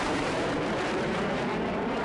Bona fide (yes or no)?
no